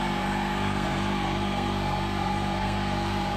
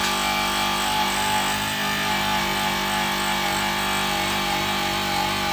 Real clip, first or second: second